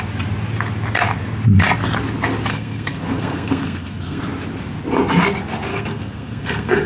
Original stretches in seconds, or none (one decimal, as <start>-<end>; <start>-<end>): 0.0-2.5; 4.2-5.7